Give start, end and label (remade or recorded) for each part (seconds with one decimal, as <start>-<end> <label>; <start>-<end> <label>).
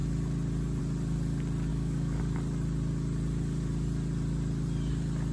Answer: 0.0-1.7 recorded; 1.7-2.2 remade; 2.2-5.3 recorded